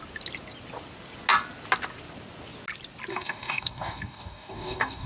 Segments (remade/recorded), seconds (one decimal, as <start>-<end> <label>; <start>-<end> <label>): 0.0-3.1 recorded; 3.1-5.1 remade